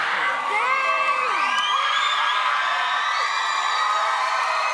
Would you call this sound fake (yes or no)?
yes